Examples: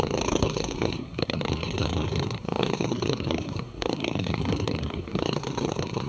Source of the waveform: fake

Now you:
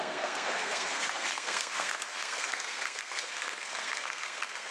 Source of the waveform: fake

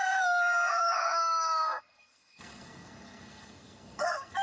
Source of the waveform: fake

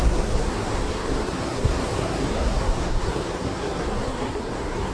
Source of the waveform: fake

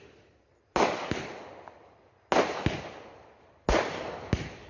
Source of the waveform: real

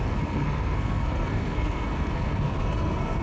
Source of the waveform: fake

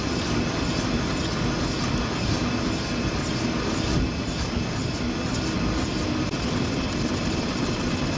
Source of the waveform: real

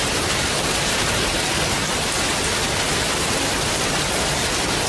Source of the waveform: real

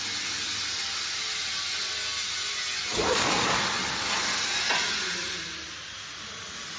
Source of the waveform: real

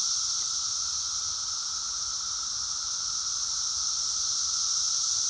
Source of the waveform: real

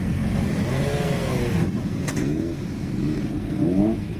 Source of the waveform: fake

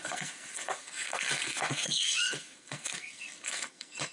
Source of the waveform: fake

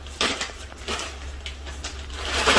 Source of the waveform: real